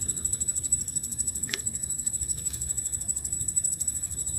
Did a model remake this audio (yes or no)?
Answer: yes